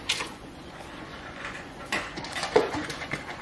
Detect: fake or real fake